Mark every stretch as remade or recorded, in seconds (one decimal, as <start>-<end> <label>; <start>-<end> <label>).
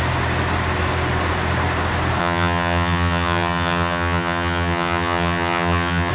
0.0-2.2 recorded; 2.2-6.1 remade